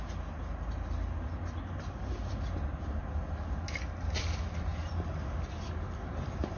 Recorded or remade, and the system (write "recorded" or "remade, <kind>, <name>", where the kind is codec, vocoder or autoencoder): recorded